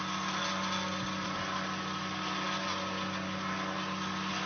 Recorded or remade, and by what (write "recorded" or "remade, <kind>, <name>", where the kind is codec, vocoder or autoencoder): recorded